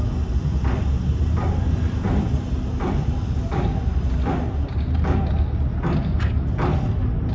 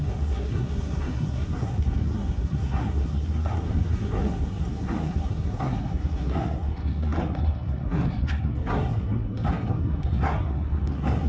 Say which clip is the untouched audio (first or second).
first